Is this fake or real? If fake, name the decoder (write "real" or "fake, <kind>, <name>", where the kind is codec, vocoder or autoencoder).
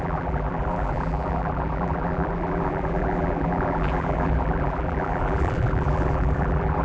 fake, vocoder, BigVGAN v2